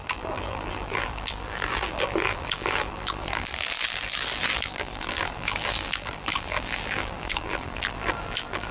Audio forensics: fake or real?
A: fake